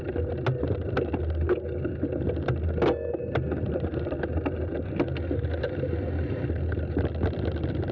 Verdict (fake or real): real